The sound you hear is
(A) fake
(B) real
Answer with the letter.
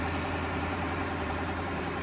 A